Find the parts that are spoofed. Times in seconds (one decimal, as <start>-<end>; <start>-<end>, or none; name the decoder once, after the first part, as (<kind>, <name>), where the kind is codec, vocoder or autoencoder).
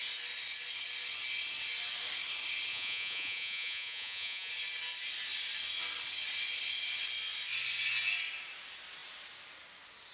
2.7-4.5 (vocoder, Vocos)